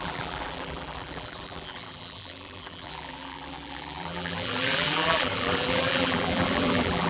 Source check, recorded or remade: remade